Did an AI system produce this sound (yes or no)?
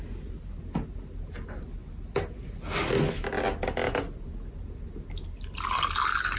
no